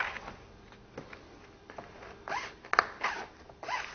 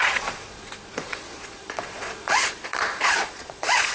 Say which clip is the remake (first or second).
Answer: second